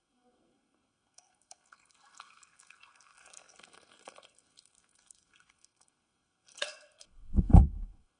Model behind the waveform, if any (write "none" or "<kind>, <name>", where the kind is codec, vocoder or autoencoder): codec, SNAC